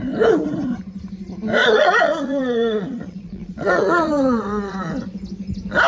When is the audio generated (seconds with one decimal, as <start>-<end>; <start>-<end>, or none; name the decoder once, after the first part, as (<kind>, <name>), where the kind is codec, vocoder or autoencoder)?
1.6-4.8 (vocoder, Vocos)